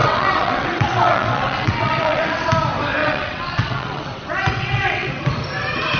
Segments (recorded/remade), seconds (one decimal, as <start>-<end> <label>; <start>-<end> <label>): 0.0-2.5 remade; 2.5-3.0 recorded; 3.0-5.1 remade; 5.1-6.0 recorded